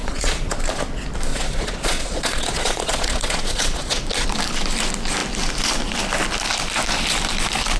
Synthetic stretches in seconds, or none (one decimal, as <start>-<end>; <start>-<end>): 0.0-0.6; 1.3-4.0